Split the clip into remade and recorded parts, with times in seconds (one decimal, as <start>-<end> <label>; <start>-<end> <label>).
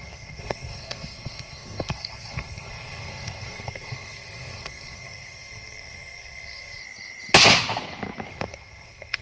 0.0-6.8 remade; 6.8-8.3 recorded; 8.3-9.2 remade